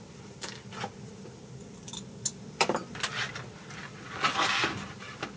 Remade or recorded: recorded